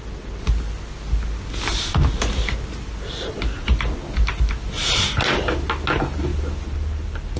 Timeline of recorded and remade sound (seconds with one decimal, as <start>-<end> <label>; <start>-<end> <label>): 0.0-7.4 recorded